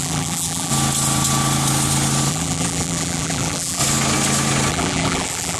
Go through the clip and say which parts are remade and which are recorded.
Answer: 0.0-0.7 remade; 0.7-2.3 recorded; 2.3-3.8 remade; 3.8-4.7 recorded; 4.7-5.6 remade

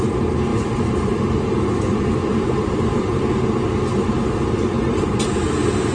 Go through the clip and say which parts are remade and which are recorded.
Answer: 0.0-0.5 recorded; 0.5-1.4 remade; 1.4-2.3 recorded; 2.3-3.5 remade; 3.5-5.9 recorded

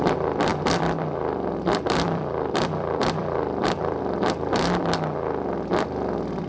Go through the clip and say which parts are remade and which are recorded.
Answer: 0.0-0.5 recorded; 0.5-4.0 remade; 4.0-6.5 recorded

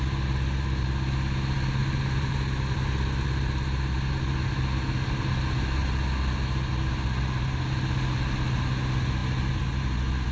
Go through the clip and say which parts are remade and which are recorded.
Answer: 0.0-1.8 recorded; 1.8-2.3 remade; 2.3-10.3 recorded

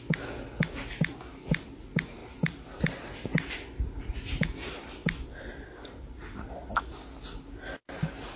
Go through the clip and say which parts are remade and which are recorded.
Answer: 0.0-2.2 recorded; 2.2-2.8 remade; 2.8-3.3 recorded; 3.3-4.1 remade; 4.1-5.0 recorded; 5.0-6.7 remade; 6.7-8.4 recorded